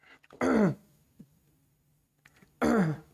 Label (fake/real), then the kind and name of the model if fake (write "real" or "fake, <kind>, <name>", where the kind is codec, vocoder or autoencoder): real